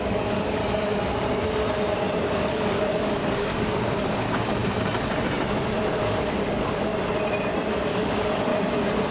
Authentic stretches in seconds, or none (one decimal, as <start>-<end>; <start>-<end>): 0.6-2.4; 4.6-5.9; 6.9-7.7; 8.5-9.1